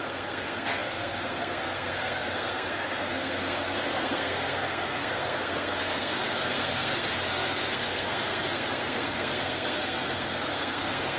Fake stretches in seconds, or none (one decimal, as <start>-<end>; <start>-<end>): 0.0-11.2